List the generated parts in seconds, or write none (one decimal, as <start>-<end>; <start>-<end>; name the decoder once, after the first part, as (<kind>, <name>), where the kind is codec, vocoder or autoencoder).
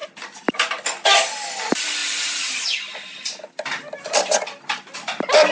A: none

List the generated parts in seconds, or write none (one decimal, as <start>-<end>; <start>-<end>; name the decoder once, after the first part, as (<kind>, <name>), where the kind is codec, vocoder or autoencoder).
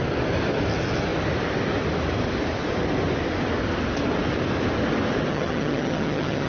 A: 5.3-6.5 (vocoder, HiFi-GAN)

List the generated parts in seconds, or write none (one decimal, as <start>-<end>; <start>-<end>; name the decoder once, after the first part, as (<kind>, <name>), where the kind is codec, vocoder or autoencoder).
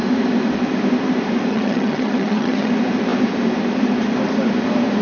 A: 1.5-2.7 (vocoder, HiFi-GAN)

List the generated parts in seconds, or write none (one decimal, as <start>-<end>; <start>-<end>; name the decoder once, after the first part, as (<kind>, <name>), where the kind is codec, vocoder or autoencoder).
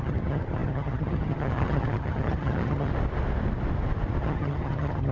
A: 0.0-2.9 (vocoder, HiFi-GAN); 4.2-5.1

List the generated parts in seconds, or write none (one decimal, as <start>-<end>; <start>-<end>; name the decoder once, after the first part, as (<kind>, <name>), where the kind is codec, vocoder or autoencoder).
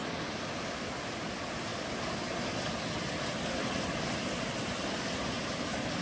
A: none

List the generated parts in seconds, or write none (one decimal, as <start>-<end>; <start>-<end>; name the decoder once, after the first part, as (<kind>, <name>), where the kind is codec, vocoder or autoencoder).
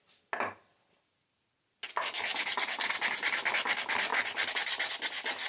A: none